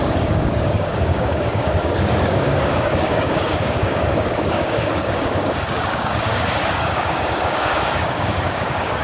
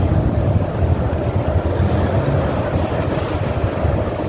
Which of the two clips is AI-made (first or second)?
first